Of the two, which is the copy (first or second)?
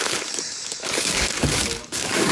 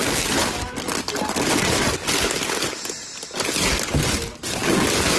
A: first